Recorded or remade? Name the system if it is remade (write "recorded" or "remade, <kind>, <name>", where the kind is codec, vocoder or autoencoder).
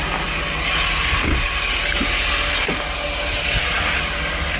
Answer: recorded